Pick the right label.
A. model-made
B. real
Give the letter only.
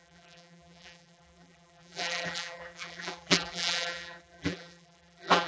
A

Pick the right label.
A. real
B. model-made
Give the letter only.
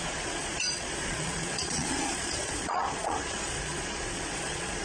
B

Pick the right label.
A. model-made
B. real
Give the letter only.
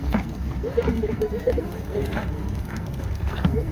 A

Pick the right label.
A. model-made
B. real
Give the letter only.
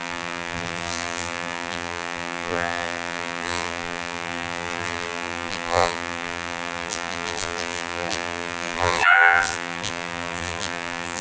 A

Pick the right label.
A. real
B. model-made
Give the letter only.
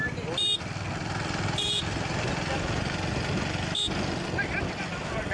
A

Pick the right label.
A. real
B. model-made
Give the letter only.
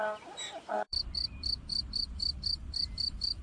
B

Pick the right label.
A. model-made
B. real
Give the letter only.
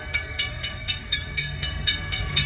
A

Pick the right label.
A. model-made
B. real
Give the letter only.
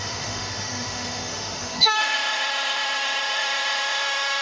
A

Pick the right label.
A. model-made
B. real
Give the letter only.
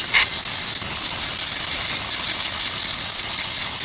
B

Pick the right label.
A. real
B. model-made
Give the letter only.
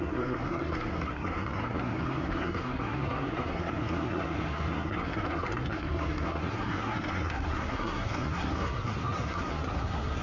B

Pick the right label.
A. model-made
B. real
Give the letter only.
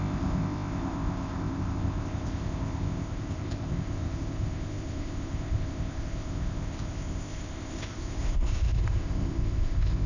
A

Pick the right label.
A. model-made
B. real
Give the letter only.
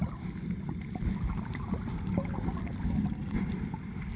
B